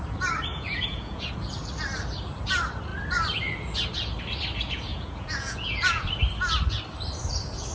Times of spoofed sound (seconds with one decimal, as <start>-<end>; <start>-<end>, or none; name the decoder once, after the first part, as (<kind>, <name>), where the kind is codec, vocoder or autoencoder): 0.5-1.3 (vocoder, Vocos); 4.9-6.1